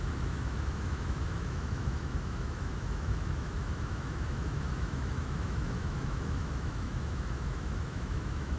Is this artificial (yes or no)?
yes